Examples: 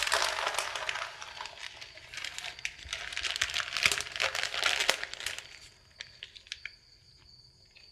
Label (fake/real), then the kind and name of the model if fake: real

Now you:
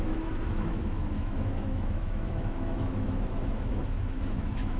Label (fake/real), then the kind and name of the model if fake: fake, autoencoder, DAC-VAE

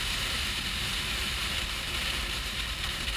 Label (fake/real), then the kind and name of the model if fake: real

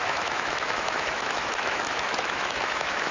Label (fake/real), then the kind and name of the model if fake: fake, autoencoder, DAC-VAE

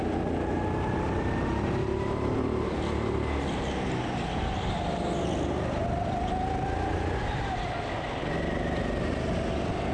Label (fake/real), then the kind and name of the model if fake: real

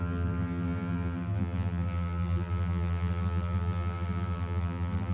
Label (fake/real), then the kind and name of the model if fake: fake, vocoder, BigVGAN v2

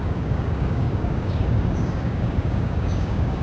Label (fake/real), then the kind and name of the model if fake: fake, codec, DAC